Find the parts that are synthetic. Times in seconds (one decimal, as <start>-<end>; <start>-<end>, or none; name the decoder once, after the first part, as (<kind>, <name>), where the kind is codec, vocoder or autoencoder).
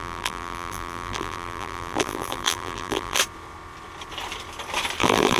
0.0-3.2 (vocoder, BigVGAN v2); 5.0-5.4